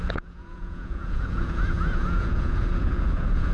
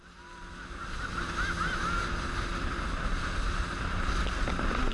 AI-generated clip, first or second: first